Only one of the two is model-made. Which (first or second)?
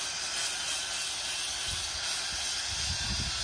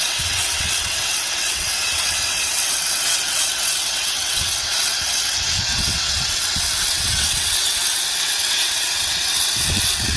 second